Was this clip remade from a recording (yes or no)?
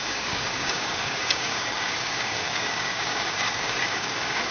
yes